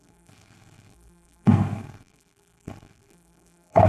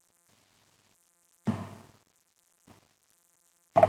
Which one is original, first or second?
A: second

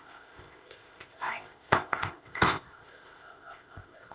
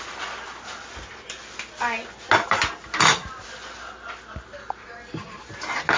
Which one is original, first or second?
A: second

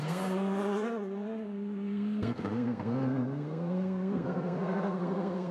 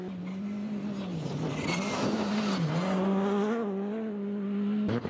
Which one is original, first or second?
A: second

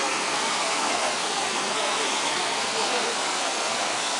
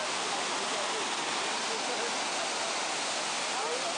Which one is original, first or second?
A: second